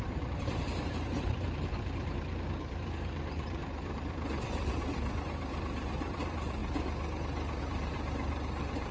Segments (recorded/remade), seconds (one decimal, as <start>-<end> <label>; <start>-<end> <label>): 0.0-6.6 remade; 6.6-7.6 recorded; 7.6-8.9 remade